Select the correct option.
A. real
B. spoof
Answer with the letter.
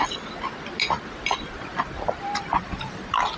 A